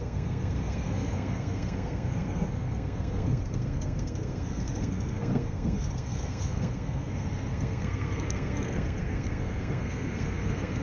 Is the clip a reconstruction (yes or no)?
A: yes